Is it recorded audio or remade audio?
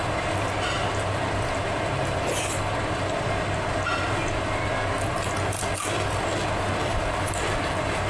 recorded